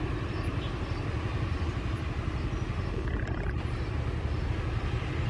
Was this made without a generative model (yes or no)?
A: yes